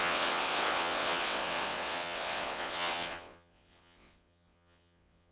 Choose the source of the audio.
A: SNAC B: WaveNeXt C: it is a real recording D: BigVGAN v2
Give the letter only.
B